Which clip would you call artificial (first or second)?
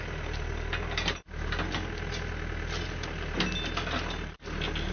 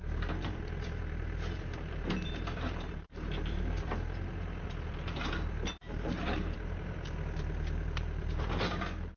second